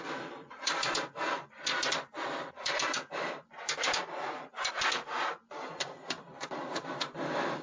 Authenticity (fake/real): fake